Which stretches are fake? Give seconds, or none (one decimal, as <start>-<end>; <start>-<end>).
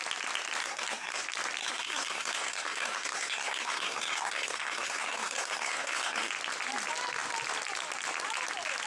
0.6-1.2; 1.6-6.3